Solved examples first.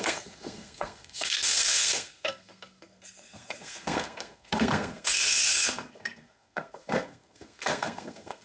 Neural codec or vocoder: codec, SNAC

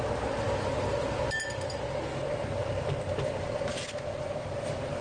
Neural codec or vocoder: none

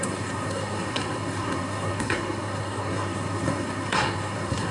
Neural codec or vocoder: codec, SNAC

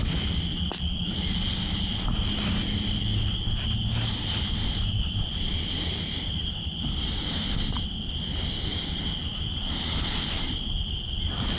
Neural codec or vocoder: none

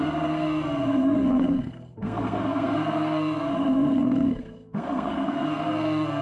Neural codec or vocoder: codec, SNAC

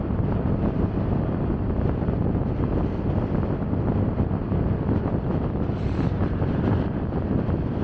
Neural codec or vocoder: none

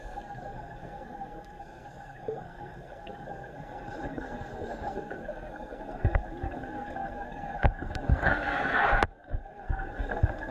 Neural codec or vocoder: codec, SNAC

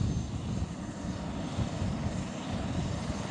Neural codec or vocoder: none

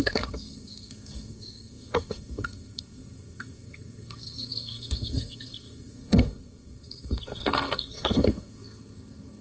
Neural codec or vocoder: codec, SNAC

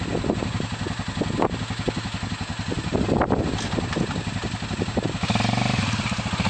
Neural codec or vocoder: none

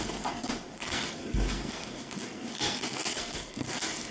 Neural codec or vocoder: codec, SNAC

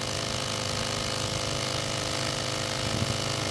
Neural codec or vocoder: none